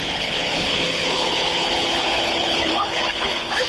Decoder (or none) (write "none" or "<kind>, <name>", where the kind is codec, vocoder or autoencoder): codec, HILCodec